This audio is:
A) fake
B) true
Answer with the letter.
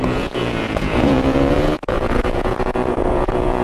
A